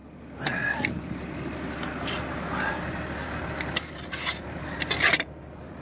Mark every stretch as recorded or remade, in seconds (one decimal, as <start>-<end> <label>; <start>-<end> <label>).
0.0-5.8 recorded